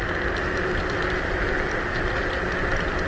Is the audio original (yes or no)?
yes